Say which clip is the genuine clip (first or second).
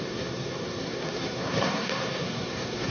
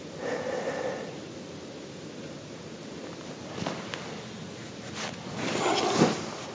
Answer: second